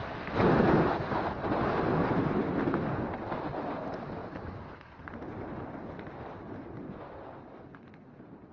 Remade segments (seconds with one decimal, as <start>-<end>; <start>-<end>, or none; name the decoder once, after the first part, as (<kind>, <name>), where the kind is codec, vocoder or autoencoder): none